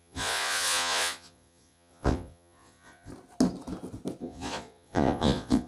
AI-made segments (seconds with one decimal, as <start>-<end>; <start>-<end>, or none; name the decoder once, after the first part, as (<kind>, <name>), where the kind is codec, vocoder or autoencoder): 0.0-3.1 (vocoder, Vocos); 4.2-5.7